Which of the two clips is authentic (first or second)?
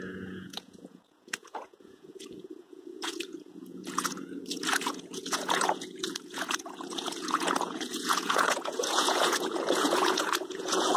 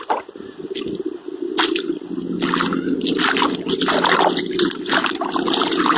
second